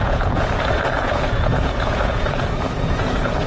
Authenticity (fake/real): fake